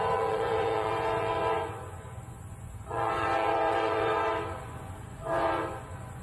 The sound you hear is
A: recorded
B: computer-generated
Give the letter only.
B